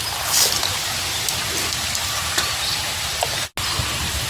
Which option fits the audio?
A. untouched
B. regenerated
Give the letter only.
A